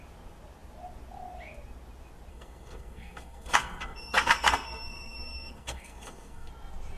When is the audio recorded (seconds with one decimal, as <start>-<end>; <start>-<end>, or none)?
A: 0.0-2.3; 6.5-7.0